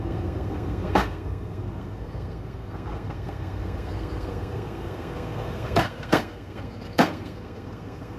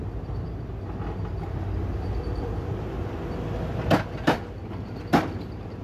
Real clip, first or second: second